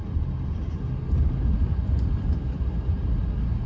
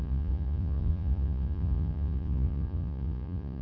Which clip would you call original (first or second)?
first